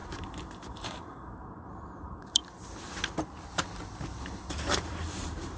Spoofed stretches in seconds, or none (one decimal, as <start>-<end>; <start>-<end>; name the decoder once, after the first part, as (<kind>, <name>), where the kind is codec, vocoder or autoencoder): 0.0-2.4 (vocoder, BigVGAN v2); 4.2-5.6